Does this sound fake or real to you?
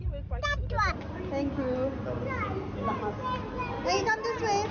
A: real